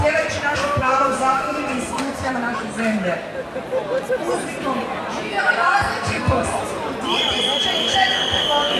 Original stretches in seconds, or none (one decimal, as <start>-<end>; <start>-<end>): 0.0-0.5; 2.3-5.4; 6.6-7.8